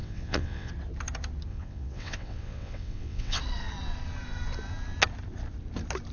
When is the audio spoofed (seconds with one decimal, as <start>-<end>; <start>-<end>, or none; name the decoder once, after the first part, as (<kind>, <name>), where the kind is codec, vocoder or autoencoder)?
0.0-0.7 (vocoder, WaveNeXt); 1.5-3.4